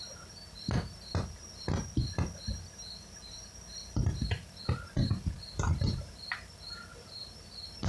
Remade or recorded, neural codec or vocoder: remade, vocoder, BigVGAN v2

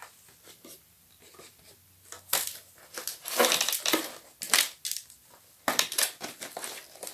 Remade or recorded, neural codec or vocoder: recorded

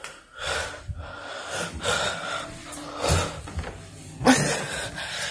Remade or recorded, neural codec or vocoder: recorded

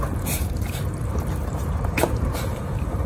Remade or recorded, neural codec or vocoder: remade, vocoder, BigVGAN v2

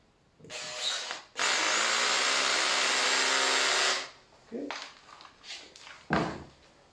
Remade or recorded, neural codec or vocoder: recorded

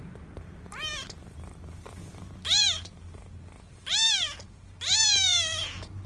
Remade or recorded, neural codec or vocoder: remade, vocoder, BigVGAN v2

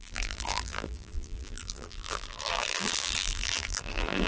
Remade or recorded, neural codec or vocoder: remade, vocoder, BigVGAN v2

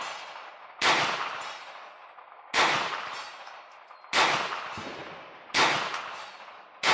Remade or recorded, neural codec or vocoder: recorded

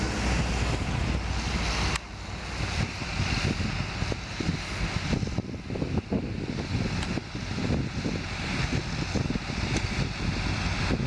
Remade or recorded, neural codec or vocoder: recorded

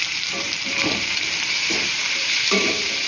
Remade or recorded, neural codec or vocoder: remade, vocoder, BigVGAN v2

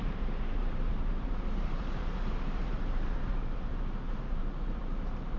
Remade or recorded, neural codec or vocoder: remade, vocoder, BigVGAN v2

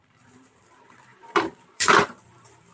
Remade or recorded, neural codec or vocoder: remade, vocoder, BigVGAN v2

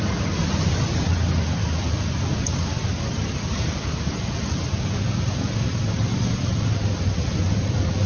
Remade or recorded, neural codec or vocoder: recorded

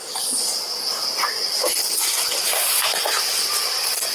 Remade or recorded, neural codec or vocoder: remade, vocoder, BigVGAN v2